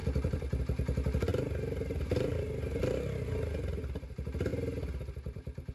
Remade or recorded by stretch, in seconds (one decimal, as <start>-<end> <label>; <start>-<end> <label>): 0.0-0.6 remade; 0.6-4.5 recorded; 4.5-5.7 remade